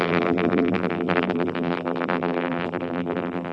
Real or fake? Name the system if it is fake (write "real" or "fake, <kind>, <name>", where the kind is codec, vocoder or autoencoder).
fake, vocoder, BigVGAN v2